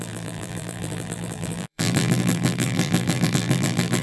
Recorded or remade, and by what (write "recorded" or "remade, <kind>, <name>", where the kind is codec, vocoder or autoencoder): remade, vocoder, BigVGAN v2